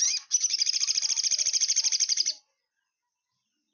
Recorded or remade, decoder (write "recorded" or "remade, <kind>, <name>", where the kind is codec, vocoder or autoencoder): recorded